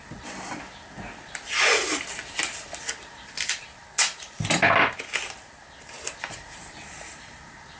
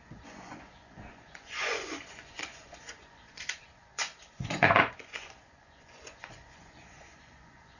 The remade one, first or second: second